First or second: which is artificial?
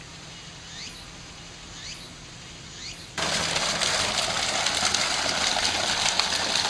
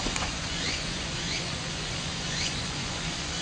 second